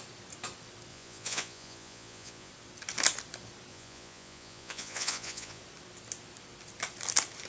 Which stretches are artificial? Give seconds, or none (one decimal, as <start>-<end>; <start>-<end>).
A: 0.9-2.5; 3.7-5.6